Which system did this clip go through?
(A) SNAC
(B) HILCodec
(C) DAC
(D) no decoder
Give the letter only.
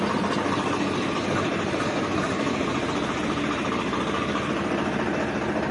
D